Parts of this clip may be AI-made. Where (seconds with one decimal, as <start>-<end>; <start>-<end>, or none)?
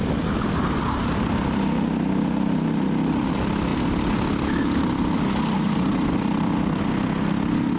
none